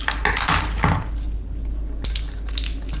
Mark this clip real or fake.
real